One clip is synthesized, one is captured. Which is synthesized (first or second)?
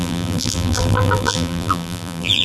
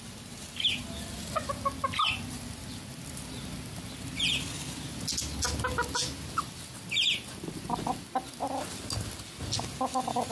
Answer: first